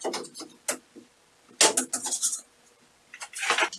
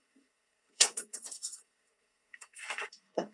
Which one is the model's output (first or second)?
second